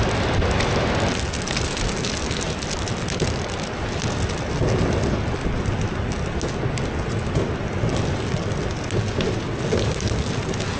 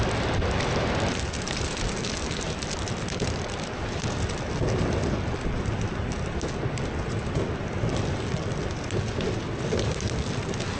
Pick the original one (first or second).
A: first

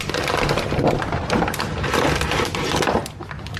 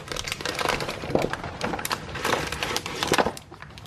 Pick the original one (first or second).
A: first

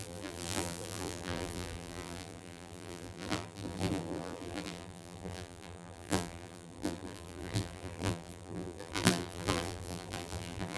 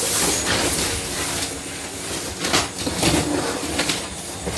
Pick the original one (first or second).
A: second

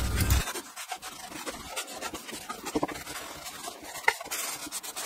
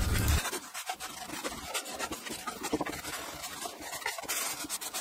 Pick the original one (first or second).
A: first